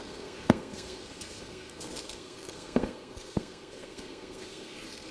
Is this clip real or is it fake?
fake